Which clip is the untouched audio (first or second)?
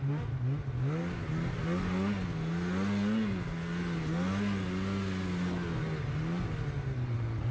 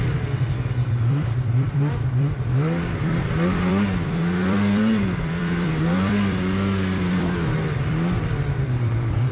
first